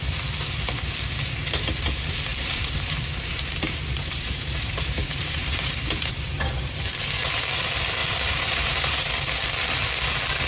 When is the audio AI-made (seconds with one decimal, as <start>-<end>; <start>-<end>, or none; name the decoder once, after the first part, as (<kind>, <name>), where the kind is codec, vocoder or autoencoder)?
2.3-6.8 (vocoder, BigVGAN v2); 8.0-9.0